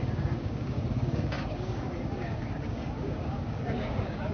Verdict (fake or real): fake